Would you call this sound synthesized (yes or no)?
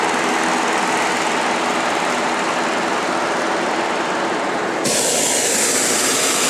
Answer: no